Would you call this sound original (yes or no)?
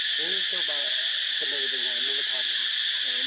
yes